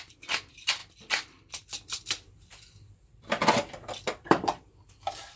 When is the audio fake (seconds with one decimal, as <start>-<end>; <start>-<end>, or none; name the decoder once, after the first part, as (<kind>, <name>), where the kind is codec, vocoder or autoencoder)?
0.0-0.8 (vocoder, BigVGAN v2); 1.5-3.4; 4.3-5.4